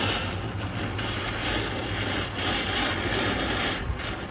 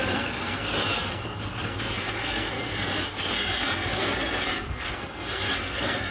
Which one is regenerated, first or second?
second